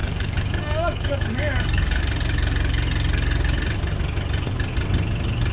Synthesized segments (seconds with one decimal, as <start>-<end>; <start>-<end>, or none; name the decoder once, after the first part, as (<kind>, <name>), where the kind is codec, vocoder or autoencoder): 0.0-2.0 (codec, DAC)